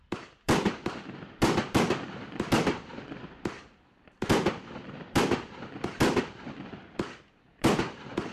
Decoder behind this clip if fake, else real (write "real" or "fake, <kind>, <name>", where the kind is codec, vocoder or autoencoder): fake, vocoder, BigVGAN v2